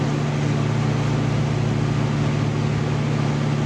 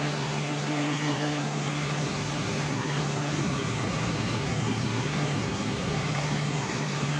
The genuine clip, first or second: first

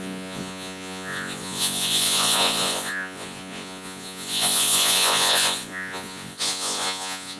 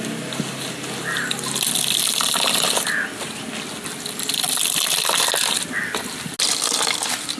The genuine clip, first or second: second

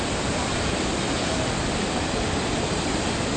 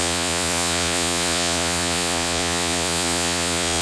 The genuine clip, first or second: first